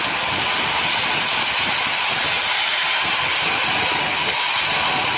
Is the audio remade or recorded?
recorded